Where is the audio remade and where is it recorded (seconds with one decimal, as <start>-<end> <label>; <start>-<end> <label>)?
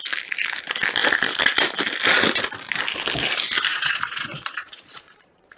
0.0-3.7 recorded; 3.7-5.6 remade